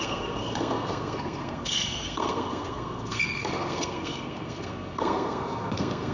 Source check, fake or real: fake